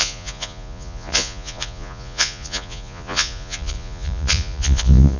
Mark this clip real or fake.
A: fake